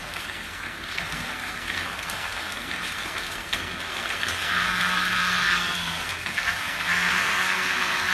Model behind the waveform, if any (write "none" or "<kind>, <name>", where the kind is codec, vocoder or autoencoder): codec, SNAC